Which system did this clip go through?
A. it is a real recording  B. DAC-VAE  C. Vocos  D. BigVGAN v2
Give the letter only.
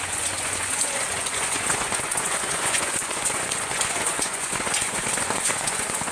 C